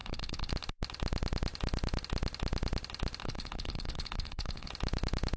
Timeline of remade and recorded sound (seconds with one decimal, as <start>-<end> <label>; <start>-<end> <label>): 0.0-0.5 remade; 0.5-3.2 recorded; 3.2-4.7 remade; 4.7-5.4 recorded